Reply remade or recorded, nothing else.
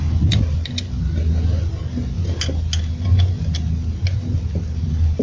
recorded